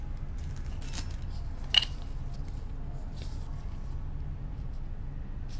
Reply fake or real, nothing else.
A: real